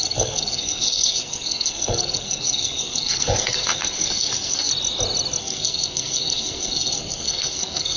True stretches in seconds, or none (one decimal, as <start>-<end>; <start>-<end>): 4.7-5.4